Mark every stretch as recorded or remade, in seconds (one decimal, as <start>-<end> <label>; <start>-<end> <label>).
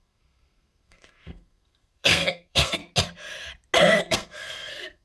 0.0-2.8 remade; 2.8-4.0 recorded; 4.0-5.0 remade